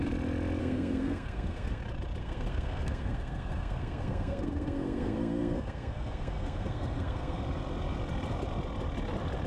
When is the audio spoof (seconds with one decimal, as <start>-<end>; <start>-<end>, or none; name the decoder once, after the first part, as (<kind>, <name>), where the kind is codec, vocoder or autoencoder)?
0.6-1.8 (codec, SNAC); 2.2-7.4